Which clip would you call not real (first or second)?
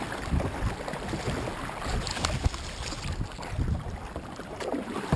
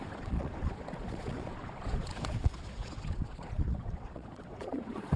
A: second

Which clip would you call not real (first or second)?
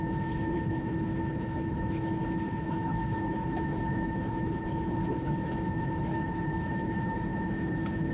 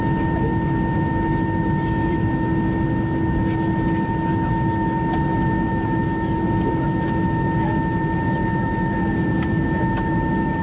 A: first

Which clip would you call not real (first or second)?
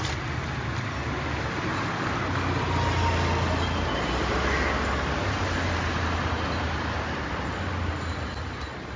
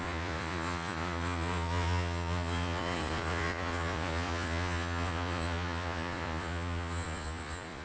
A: second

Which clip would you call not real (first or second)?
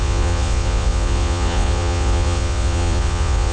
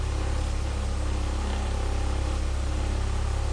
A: first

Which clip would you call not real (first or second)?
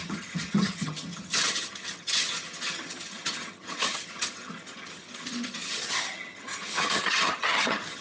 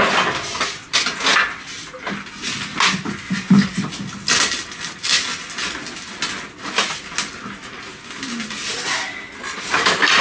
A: first